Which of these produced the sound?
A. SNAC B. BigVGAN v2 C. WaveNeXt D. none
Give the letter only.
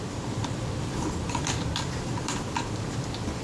B